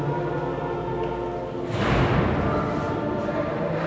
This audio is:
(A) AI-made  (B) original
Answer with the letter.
B